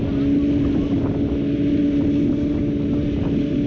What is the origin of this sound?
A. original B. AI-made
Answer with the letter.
A